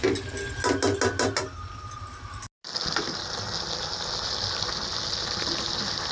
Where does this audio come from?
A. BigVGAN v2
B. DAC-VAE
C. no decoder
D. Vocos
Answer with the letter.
C